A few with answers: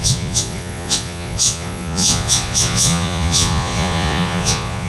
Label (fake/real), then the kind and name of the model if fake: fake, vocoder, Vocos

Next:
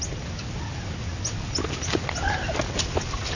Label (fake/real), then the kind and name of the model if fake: real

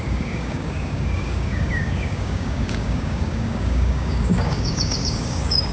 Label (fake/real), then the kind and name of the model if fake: fake, codec, DAC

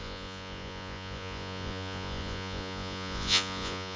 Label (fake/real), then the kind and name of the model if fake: fake, vocoder, Vocos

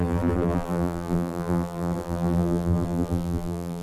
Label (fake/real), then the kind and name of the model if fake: fake, vocoder, BigVGAN v2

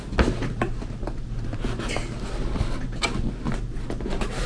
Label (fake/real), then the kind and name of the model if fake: real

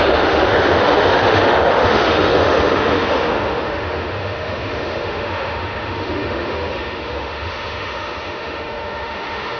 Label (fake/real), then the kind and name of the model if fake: fake, autoencoder, DAC-VAE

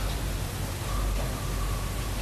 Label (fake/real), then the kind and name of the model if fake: real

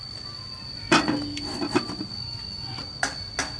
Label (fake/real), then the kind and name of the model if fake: real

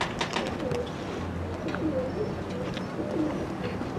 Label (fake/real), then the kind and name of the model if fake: real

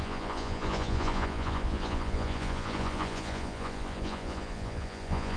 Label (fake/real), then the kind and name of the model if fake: fake, vocoder, Vocos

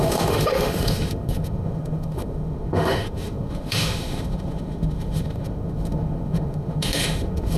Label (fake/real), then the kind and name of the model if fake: fake, autoencoder, DAC-VAE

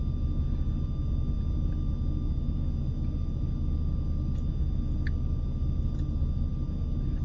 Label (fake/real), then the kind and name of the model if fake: real